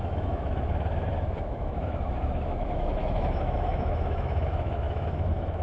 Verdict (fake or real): fake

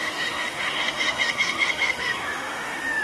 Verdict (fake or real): fake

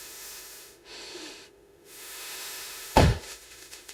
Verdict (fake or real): fake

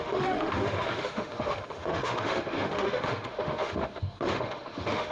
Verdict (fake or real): fake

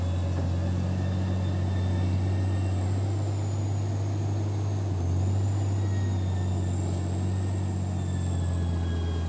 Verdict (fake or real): real